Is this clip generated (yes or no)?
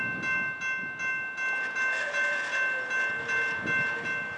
no